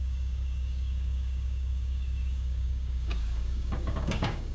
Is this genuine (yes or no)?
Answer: no